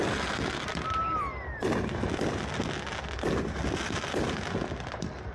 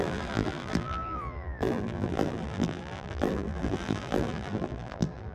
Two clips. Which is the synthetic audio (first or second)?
second